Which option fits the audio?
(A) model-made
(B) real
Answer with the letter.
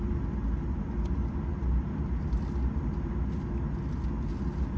B